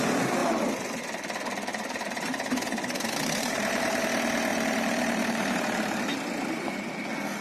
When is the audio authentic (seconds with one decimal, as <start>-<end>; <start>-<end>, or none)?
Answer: 0.0-0.4; 1.0-1.7; 4.0-4.5; 5.6-7.4